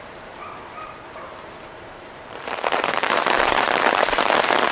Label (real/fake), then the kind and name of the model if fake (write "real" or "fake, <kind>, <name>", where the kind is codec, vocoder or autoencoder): fake, vocoder, BigVGAN v2